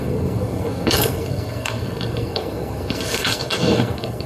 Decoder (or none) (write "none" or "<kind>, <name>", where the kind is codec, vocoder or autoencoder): codec, SNAC